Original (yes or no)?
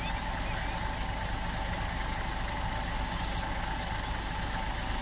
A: yes